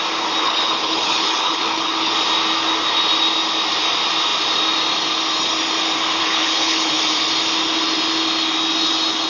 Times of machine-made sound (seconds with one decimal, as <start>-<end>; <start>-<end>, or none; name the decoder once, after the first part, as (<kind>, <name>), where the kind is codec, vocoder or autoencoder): 0.4-2.1 (codec, HILCodec); 6.2-7.0